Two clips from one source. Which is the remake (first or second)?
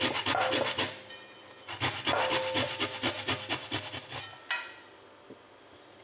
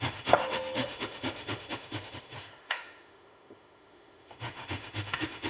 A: second